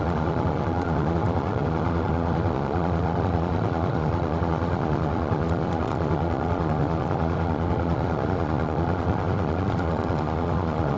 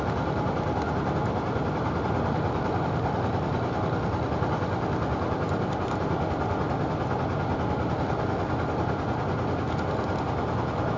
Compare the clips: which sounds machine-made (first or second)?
first